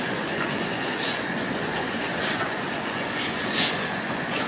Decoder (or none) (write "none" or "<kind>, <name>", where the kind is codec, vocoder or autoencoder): vocoder, Vocos